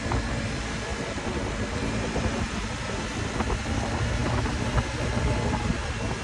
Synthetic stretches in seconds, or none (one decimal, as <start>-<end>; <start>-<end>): none